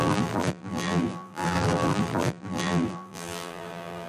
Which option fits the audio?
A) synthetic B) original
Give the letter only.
A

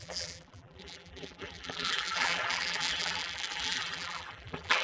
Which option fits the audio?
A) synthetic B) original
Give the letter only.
A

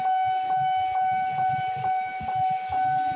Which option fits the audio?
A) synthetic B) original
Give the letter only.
B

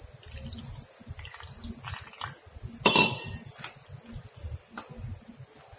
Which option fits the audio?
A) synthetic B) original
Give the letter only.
B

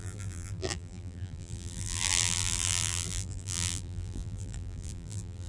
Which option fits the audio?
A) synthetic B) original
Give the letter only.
A